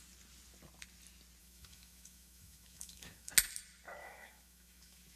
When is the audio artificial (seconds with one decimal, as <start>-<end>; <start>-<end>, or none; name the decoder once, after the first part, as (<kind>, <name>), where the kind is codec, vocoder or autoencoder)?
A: 1.4-3.3 (autoencoder, DAC-VAE); 4.0-5.2

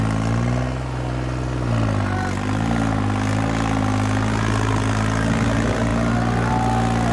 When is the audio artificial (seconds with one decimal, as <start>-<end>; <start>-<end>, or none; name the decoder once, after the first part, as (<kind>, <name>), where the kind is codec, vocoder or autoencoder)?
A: none